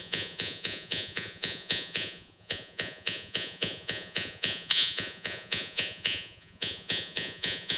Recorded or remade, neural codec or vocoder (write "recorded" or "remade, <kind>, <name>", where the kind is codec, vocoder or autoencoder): remade, vocoder, Vocos